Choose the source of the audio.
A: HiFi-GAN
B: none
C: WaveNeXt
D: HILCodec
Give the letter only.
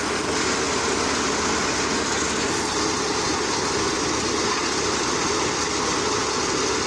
B